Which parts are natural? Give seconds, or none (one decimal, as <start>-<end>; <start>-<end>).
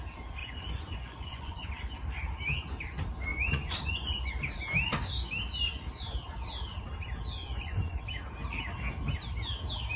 0.0-0.4; 1.7-3.3; 4.3-7.4; 8.0-10.0